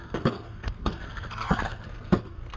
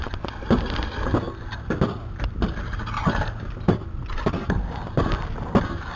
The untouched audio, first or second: second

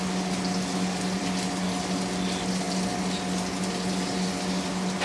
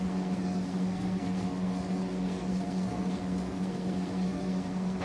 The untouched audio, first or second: first